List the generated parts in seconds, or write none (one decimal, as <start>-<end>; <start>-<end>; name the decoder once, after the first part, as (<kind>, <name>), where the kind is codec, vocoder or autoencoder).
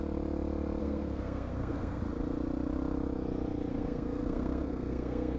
0.8-2.0 (codec, SNAC); 3.7-5.4